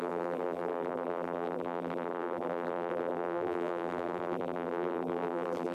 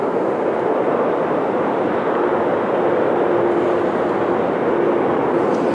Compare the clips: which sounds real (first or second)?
second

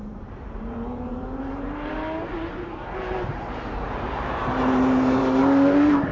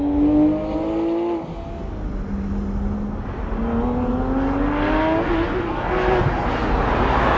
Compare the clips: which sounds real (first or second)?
second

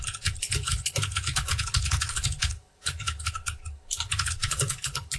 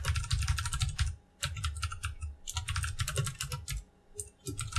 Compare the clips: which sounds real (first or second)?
second